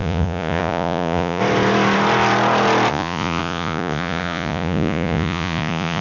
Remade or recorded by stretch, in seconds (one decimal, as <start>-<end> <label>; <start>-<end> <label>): 0.0-1.4 remade; 1.4-2.9 recorded; 2.9-6.0 remade